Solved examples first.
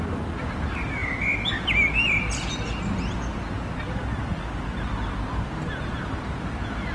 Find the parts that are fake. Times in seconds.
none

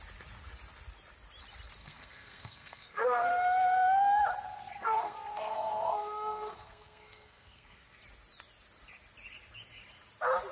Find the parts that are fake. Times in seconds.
1.8-3.3 (codec, SNAC); 4.5-8.0

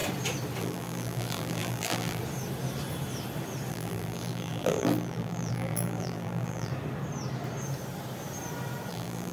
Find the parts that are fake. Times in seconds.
0.6-2.2 (vocoder, BigVGAN v2); 3.7-6.7; 8.9-9.3

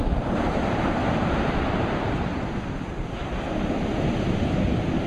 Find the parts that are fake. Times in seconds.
0.0-3.2 (vocoder, BigVGAN v2); 4.1-5.1

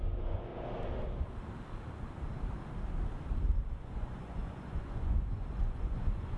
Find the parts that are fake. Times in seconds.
0.0-0.5 (vocoder, Vocos); 3.8-6.4

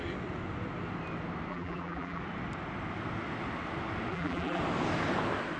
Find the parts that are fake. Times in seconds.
1.5-2.2 (vocoder, BigVGAN v2); 4.1-4.6

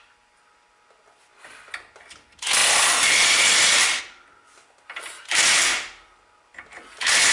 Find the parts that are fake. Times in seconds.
none

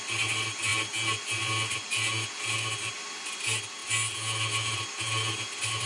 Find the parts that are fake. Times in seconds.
none